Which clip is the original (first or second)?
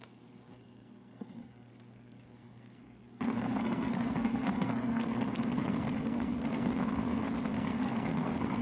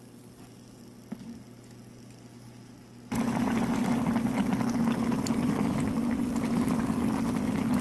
second